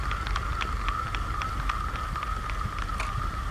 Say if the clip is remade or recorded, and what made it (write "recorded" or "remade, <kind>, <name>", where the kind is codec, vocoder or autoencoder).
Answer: recorded